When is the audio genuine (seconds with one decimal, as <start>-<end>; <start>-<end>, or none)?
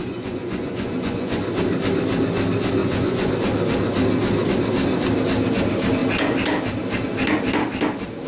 1.4-2.8; 3.3-8.3